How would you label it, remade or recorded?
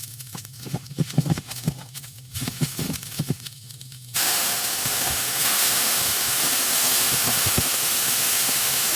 remade